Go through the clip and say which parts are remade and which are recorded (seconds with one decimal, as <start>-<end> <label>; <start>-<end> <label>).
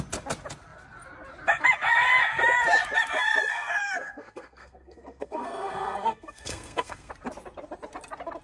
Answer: 0.0-3.5 recorded; 3.5-7.1 remade; 7.1-8.4 recorded